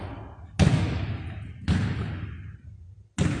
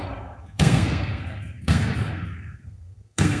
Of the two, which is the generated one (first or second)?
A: second